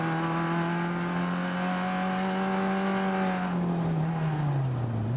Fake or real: real